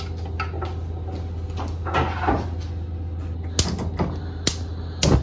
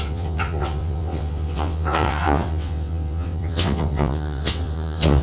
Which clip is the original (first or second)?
first